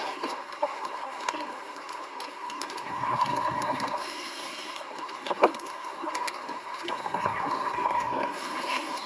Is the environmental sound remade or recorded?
remade